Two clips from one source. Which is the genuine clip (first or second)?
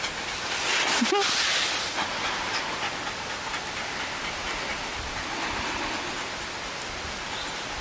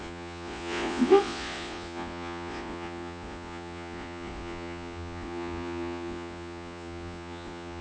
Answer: first